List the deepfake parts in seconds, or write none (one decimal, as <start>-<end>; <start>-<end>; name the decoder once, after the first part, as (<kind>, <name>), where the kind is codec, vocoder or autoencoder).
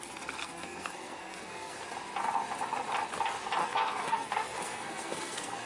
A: 0.4-1.8 (codec, SNAC); 3.6-5.7